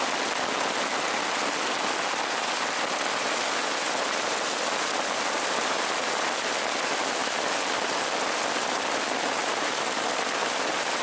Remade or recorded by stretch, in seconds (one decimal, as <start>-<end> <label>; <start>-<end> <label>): 0.0-11.0 recorded